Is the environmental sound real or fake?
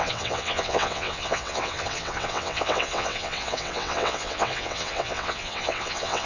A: fake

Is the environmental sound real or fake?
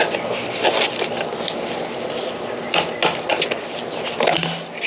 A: real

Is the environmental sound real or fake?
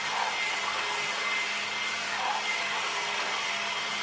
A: real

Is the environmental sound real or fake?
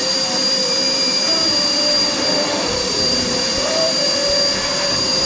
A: fake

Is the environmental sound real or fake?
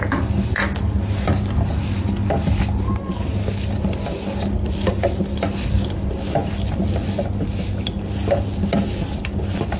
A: real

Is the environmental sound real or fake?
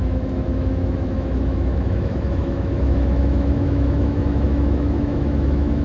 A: fake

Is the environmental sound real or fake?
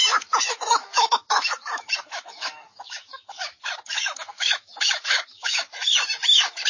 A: fake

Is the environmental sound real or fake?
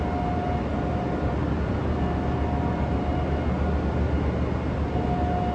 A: real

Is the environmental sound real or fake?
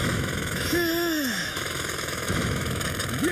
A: fake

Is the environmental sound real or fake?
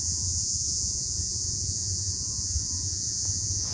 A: fake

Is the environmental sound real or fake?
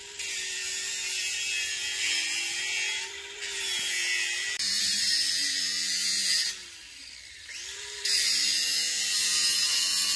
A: fake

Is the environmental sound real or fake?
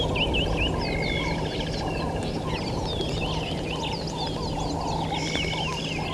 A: real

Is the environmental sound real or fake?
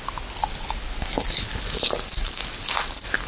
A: real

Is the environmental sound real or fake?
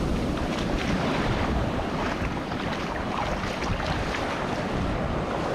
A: fake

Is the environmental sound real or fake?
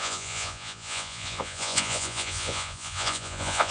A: fake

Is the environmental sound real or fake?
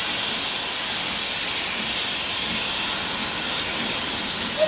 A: real